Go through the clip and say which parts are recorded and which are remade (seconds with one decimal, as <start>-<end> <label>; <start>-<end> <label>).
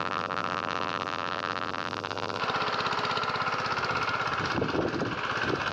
0.0-2.4 remade; 2.4-5.7 recorded